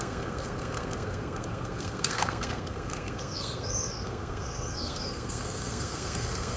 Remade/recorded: remade